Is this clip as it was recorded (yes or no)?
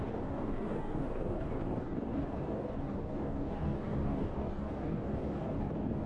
no